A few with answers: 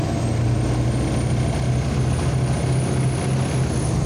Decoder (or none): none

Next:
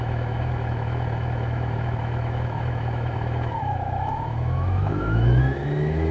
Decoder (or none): autoencoder, DAC-VAE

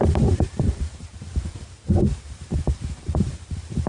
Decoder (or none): vocoder, BigVGAN v2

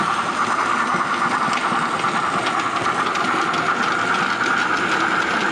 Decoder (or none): none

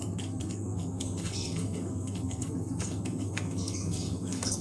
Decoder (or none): codec, SNAC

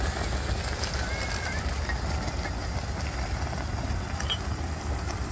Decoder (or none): none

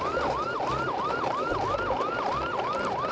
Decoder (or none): none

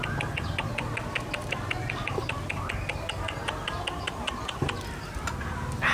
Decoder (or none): none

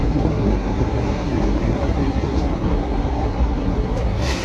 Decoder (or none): codec, SNAC